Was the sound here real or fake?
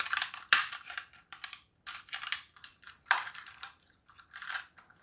fake